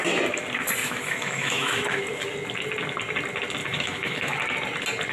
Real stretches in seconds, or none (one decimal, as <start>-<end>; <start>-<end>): 0.0-0.8; 2.0-3.6; 4.4-5.1